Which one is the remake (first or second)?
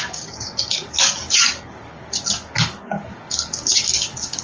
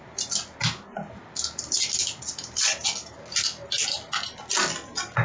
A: first